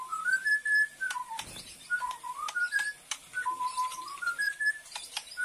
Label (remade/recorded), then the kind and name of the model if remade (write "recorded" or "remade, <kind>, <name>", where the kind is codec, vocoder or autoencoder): recorded